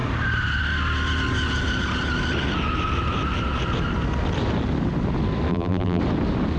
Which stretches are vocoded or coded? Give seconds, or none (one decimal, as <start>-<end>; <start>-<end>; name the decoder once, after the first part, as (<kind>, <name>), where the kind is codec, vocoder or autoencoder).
5.5-6.0 (vocoder, BigVGAN v2)